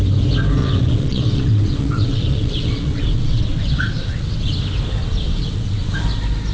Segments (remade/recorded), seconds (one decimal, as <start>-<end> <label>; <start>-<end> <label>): 0.0-0.6 recorded; 0.6-4.5 remade; 4.5-5.0 recorded; 5.0-5.9 remade; 5.9-6.5 recorded